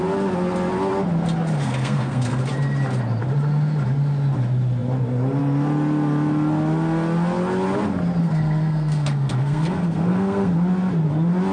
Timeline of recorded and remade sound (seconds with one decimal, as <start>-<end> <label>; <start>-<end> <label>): 0.0-1.6 recorded; 1.6-2.4 remade; 2.4-8.2 recorded; 8.2-10.5 remade; 10.5-11.5 recorded